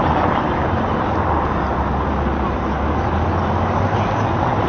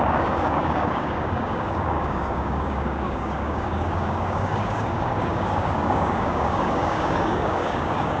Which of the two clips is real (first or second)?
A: first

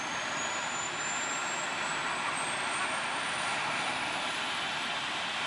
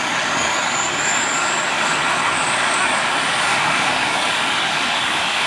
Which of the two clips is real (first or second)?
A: first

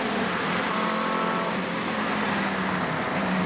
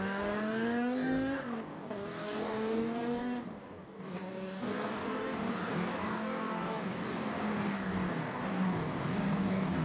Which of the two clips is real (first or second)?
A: first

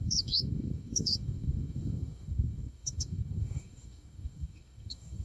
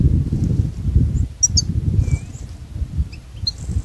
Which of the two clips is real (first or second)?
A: second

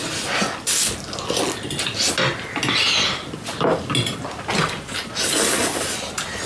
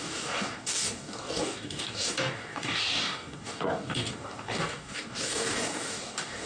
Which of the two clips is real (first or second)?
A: first